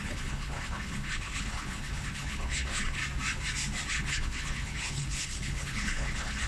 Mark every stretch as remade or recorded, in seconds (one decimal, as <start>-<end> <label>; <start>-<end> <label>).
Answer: 0.0-3.0 remade; 3.0-3.9 recorded; 3.9-6.5 remade